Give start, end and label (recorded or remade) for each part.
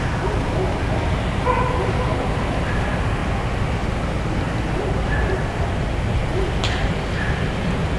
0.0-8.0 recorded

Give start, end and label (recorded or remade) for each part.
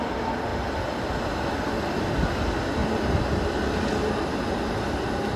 0.0-5.4 recorded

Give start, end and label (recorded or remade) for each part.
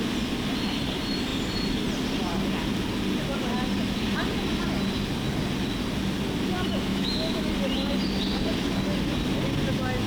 0.0-6.9 recorded; 6.9-7.5 remade; 7.5-10.1 recorded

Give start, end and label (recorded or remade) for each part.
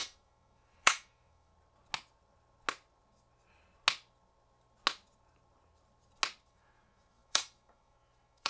0.0-1.5 remade; 1.5-6.5 recorded; 6.5-8.5 remade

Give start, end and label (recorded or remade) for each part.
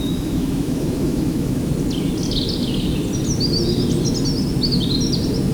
0.0-1.7 remade; 1.7-5.5 recorded